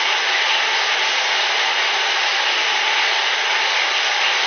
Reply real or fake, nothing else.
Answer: real